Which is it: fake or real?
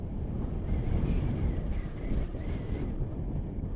real